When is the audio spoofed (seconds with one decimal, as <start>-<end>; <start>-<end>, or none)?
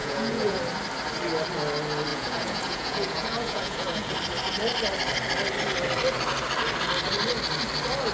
0.0-0.6; 2.1-4.1